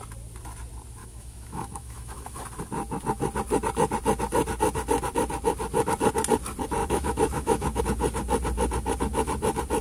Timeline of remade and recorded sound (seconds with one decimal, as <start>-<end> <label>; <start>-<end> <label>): 0.0-1.0 recorded; 1.0-2.4 remade; 2.4-6.8 recorded; 6.8-7.8 remade; 7.8-9.8 recorded